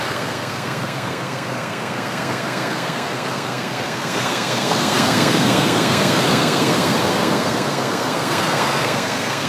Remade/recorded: remade